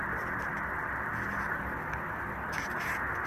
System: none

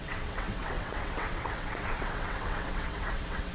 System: vocoder, WaveNeXt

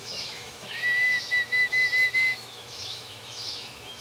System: autoencoder, DAC-VAE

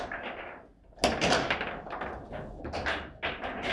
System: none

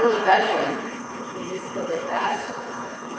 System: codec, HILCodec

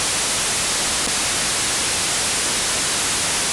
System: none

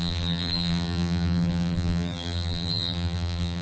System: vocoder, BigVGAN v2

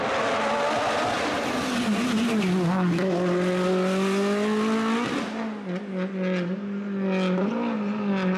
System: none